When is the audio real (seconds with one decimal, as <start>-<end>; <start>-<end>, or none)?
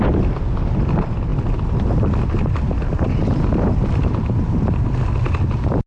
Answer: 0.0-5.9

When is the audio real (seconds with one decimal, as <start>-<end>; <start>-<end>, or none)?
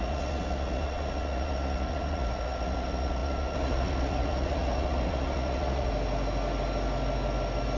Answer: 5.9-7.8